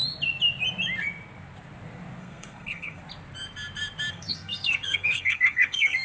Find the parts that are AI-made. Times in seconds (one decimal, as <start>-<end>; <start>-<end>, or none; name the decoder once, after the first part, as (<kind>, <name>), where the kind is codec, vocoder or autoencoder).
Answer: 2.2-3.0 (codec, SNAC); 4.1-6.0